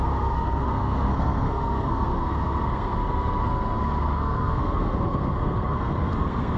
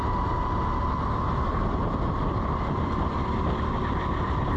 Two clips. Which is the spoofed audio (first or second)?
first